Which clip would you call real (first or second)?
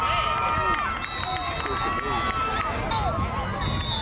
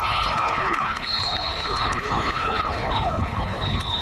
first